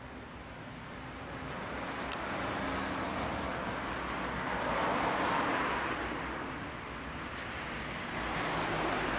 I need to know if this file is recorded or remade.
recorded